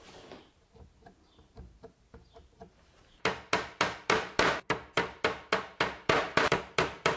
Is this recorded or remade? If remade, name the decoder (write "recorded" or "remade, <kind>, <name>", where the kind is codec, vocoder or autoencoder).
remade, vocoder, BigVGAN v2